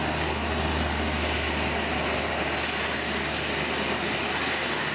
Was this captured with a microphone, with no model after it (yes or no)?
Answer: yes